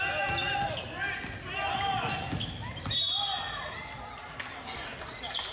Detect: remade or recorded recorded